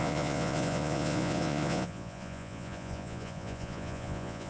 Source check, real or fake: fake